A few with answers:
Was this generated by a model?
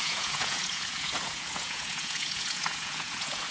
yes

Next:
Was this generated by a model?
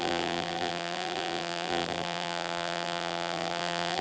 yes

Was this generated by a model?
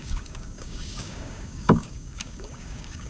yes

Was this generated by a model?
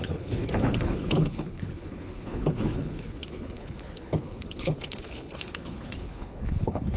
yes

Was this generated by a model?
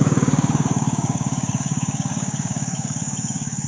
yes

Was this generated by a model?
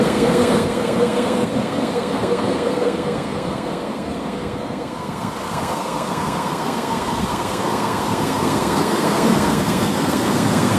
yes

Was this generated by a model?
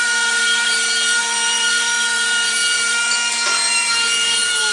yes